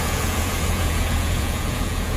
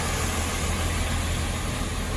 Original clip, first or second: second